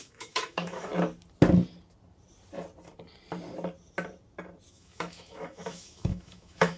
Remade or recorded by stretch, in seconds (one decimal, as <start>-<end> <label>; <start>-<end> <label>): 0.0-0.9 remade; 0.9-4.7 recorded; 4.7-6.8 remade